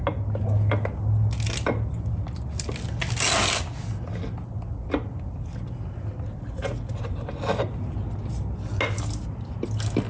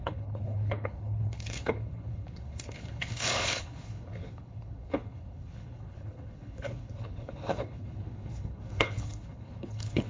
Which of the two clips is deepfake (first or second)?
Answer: second